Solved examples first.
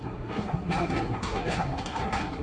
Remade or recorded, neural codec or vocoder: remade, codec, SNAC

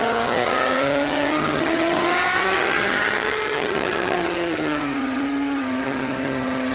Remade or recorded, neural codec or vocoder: remade, vocoder, HiFi-GAN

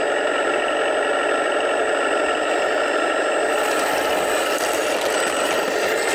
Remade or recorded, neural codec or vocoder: recorded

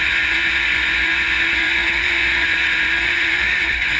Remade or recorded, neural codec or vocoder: remade, vocoder, Vocos